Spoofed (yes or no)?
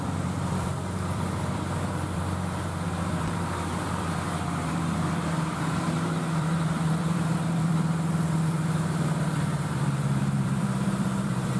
yes